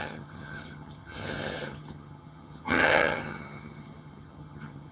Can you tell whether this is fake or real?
fake